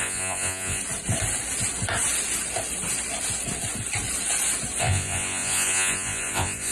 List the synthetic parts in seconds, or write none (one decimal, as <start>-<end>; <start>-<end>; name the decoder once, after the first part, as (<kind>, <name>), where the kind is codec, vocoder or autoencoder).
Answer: 0.0-0.8 (vocoder, Vocos); 4.8-6.7